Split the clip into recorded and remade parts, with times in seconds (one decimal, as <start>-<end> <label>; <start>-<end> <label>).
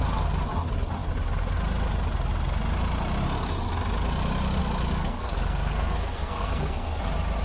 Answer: 0.0-5.0 recorded; 5.0-7.0 remade; 7.0-7.4 recorded